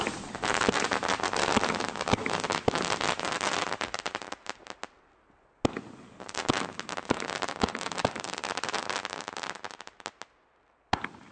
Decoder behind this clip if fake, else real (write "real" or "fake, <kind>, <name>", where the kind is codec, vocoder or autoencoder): real